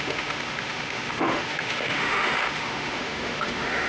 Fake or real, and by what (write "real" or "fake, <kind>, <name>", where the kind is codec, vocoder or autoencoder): fake, autoencoder, DAC-VAE